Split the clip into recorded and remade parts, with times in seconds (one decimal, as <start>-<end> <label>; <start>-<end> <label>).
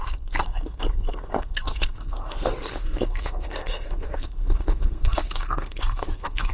0.0-6.5 remade